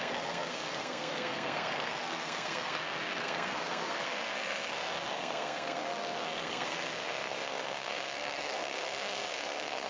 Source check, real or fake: fake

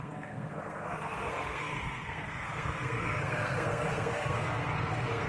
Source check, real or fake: fake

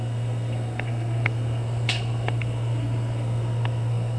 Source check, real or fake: fake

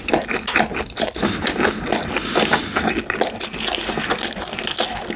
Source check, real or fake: real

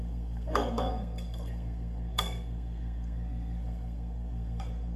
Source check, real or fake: fake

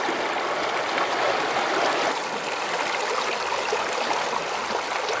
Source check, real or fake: real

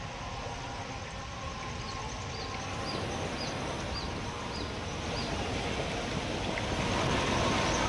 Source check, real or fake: real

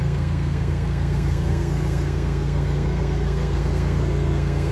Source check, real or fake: fake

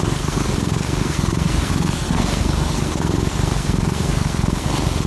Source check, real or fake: fake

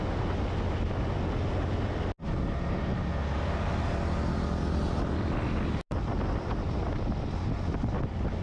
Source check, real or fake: real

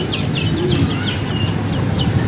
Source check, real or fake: real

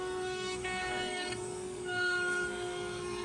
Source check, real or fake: fake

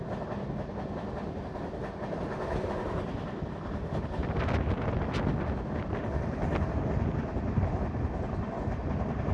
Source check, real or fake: real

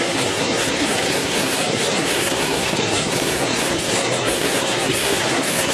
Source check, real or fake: fake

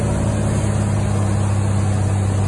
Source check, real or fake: real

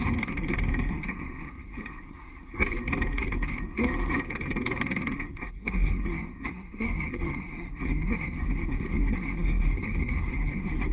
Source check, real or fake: fake